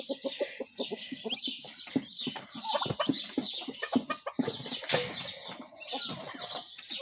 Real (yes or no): yes